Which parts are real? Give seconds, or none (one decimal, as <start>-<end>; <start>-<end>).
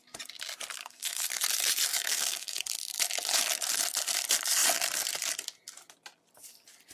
0.0-0.8; 1.3-1.9; 2.6-6.9